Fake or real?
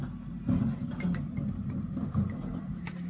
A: real